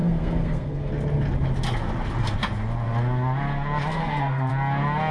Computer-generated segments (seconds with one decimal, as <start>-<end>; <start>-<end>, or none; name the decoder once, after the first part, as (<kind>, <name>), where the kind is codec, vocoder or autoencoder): 0.0-0.9 (codec, SNAC); 3.9-4.5